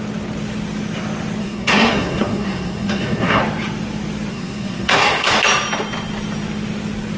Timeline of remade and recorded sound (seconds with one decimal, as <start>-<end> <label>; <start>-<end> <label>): 0.0-1.4 recorded; 1.4-3.4 remade; 3.4-4.3 recorded; 4.3-5.3 remade; 5.3-7.2 recorded